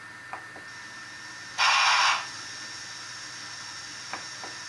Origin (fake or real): real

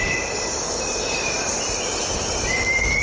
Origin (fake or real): fake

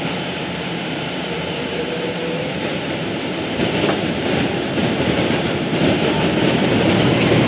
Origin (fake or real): fake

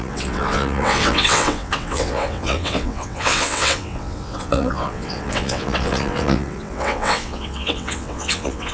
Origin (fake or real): fake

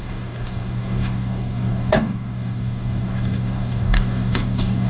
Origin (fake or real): fake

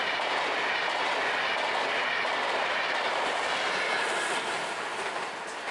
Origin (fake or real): real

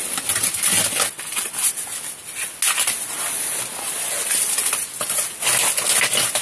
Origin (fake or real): real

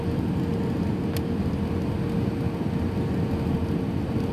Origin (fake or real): real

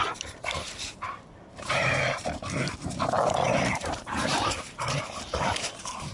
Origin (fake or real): fake